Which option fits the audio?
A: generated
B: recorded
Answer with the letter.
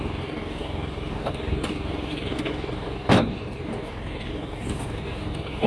A